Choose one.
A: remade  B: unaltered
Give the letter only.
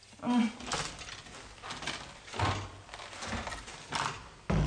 B